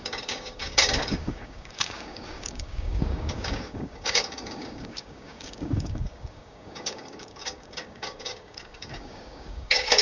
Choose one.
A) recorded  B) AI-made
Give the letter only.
B